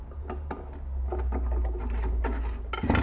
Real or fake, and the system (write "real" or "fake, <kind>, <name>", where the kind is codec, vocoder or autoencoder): real